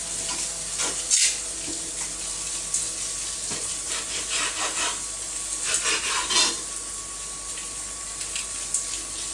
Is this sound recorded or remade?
recorded